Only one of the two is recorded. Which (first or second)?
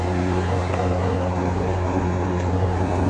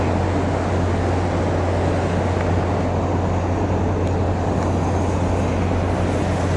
second